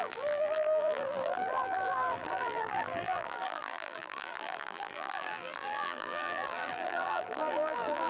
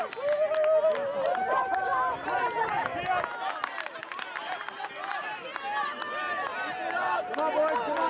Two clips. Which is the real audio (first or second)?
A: second